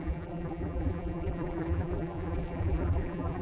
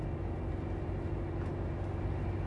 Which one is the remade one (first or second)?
first